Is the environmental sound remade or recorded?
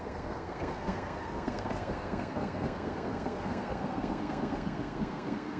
remade